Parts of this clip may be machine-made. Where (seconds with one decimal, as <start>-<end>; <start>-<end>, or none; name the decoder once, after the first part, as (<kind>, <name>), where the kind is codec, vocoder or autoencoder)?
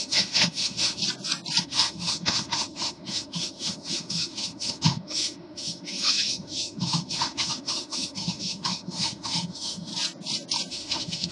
0.0-1.0 (autoencoder, DAC-VAE); 1.6-9.9; 10.7-11.3